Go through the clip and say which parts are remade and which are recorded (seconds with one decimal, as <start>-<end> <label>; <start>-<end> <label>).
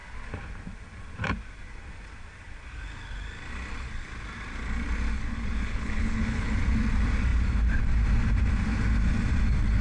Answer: 0.0-5.3 recorded; 5.3-6.6 remade; 6.6-9.8 recorded